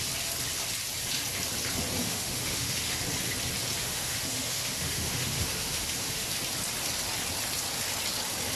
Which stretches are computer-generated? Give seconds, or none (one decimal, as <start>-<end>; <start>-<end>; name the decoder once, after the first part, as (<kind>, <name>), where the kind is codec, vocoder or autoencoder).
2.0-3.0 (autoencoder, DAC-VAE); 3.8-6.3